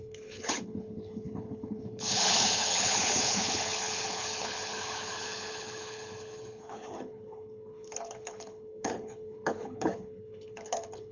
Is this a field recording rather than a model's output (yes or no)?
no